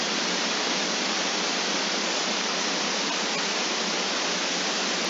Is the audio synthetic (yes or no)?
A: no